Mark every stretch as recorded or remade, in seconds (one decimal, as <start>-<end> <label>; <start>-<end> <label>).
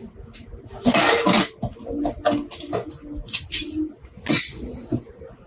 0.0-4.0 recorded; 4.0-4.8 remade; 4.8-5.5 recorded